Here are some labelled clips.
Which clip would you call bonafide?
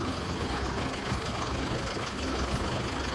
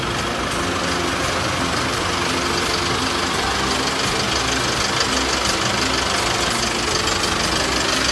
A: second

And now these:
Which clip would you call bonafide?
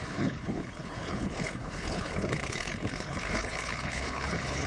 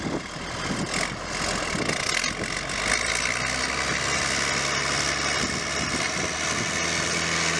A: second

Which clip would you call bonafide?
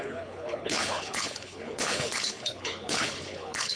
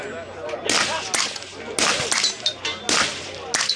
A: second